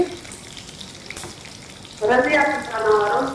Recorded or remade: recorded